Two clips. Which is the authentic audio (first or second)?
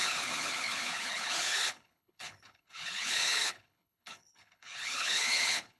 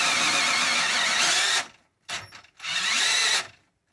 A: second